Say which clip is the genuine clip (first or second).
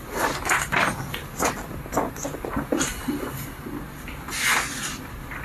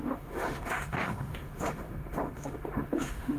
first